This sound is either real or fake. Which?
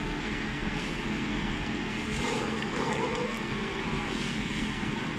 fake